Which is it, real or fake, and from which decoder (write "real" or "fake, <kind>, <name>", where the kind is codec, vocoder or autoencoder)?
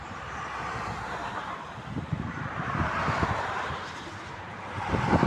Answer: fake, vocoder, BigVGAN v2